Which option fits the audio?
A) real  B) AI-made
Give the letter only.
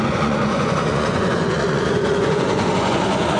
B